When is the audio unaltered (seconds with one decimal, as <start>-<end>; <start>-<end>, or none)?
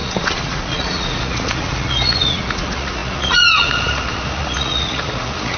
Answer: none